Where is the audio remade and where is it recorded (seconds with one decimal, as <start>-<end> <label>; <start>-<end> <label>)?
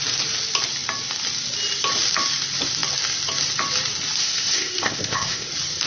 0.0-4.2 recorded; 4.2-5.5 remade; 5.5-5.9 recorded